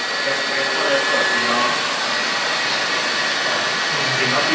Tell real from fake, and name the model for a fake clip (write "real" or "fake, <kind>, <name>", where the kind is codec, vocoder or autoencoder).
real